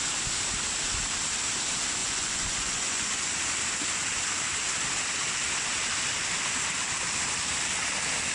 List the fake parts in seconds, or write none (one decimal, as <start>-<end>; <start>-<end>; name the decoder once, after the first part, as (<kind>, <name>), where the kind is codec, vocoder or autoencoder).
2.0-3.3 (vocoder, Vocos)